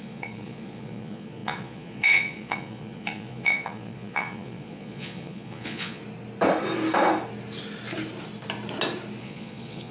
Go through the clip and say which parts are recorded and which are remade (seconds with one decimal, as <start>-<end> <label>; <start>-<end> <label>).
0.0-6.0 remade; 6.0-9.2 recorded; 9.2-9.9 remade